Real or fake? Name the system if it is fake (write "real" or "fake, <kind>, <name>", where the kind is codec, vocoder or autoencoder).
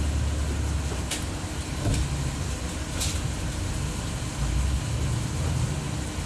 real